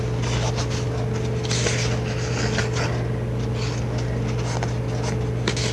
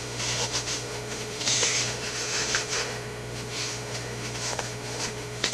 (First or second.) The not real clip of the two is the second